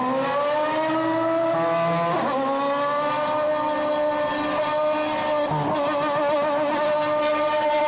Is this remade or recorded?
recorded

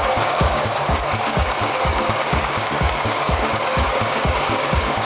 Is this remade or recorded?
remade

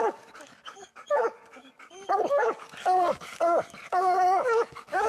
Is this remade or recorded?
remade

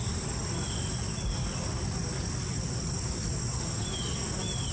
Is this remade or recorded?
recorded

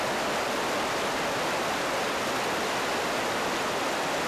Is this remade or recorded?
recorded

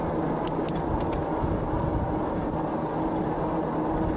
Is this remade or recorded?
recorded